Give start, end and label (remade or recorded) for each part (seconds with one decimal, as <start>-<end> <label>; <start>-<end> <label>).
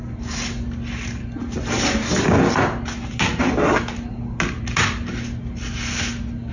0.0-6.5 recorded